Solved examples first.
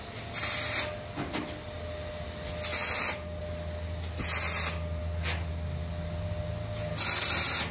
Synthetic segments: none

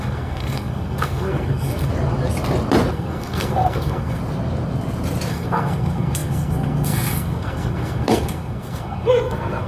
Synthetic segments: 0.0-1.9; 2.9-4.2; 5.3-9.7

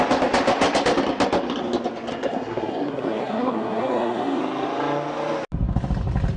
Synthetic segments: 2.1-4.4

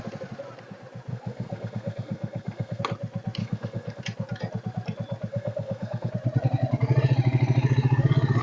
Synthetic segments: 1.1-2.8; 3.4-4.0; 5.3-6.1

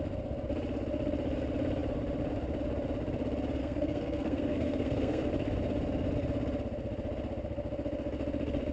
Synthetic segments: 3.6-5.3